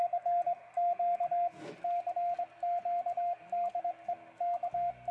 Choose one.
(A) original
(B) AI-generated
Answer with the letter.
A